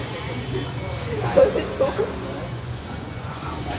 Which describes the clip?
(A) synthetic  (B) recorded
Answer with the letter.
A